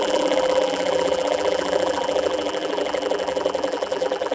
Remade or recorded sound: remade